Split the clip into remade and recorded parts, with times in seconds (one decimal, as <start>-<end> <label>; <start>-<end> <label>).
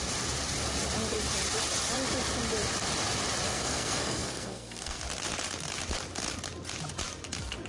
0.0-3.5 recorded; 3.5-5.0 remade; 5.0-7.7 recorded